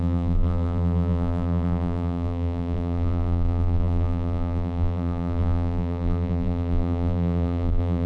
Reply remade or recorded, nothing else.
remade